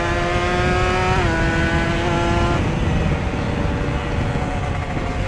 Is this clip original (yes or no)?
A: yes